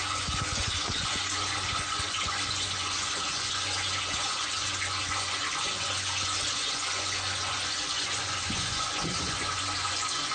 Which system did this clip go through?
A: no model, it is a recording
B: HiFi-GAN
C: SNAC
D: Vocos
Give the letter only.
D